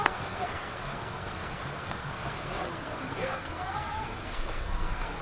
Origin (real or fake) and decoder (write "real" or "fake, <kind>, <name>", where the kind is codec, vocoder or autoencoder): fake, codec, SNAC